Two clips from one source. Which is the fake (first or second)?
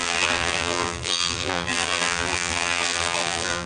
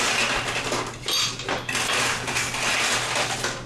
first